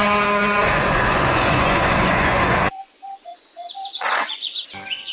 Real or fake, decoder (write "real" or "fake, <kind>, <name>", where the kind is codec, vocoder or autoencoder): fake, vocoder, Vocos